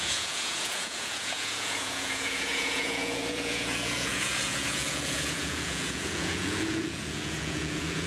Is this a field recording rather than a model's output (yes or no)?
no